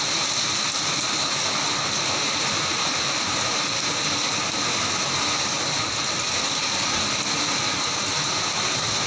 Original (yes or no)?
yes